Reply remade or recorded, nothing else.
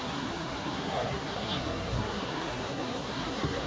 remade